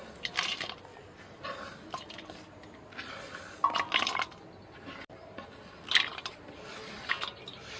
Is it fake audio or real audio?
real